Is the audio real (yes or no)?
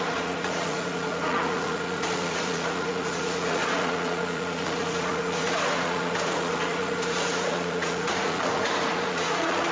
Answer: no